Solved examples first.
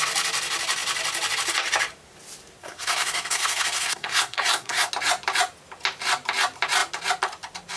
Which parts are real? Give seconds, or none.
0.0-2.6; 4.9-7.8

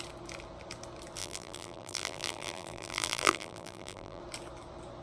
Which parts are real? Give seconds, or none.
0.0-1.2; 4.2-5.0

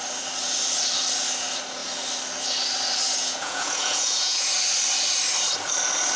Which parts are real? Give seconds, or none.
0.0-3.2; 4.5-6.2

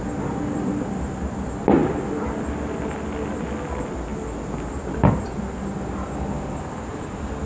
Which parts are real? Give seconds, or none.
0.0-7.5